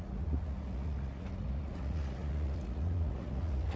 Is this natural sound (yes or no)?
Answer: no